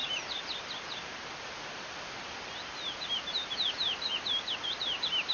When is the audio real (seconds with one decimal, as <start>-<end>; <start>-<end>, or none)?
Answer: none